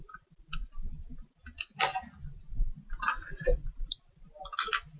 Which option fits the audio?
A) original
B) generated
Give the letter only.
A